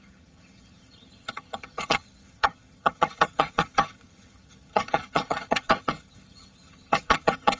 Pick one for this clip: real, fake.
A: fake